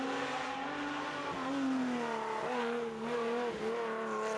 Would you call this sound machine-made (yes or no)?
no